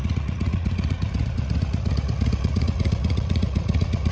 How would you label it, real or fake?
fake